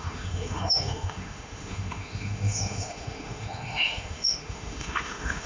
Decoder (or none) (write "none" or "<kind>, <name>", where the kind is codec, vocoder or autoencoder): autoencoder, DAC-VAE